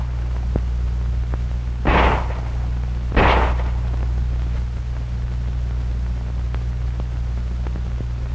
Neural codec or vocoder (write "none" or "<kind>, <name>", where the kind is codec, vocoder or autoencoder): none